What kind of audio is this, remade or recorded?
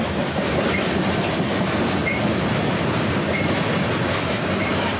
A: recorded